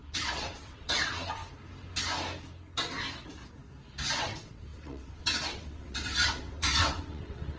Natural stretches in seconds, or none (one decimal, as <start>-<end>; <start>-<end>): 1.4-4.2